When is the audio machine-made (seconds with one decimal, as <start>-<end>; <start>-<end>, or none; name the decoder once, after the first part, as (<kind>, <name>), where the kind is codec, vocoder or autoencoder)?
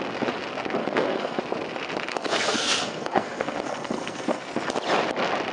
0.8-1.4 (codec, SNAC); 2.1-4.5